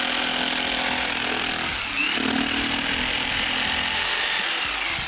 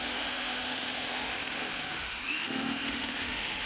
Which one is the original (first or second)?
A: first